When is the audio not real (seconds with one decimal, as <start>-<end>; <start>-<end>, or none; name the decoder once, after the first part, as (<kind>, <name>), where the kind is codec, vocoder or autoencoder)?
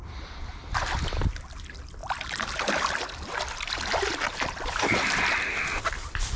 2.0-5.8 (vocoder, BigVGAN v2)